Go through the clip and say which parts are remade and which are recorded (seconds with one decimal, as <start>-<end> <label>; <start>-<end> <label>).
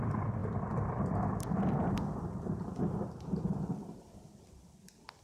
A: 0.0-5.2 recorded